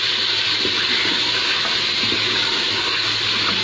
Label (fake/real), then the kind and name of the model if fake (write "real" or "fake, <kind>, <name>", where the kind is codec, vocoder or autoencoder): real